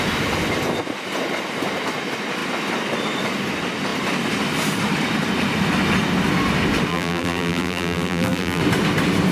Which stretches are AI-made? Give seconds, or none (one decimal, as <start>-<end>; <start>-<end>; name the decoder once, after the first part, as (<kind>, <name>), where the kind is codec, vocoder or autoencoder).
6.9-8.6 (vocoder, BigVGAN v2)